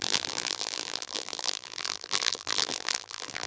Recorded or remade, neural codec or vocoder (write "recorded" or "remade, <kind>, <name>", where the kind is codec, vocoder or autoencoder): remade, vocoder, BigVGAN v2